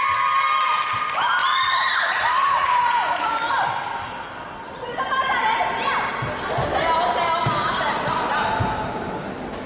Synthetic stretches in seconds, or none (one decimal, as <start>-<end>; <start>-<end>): 1.4-3.2